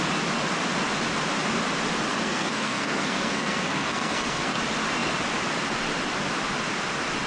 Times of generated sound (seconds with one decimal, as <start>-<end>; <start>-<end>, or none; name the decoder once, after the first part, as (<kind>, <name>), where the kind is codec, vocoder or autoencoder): 2.1-4.6 (codec, SNAC)